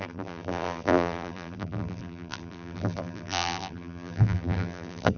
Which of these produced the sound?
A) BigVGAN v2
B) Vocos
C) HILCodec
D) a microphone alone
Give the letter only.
A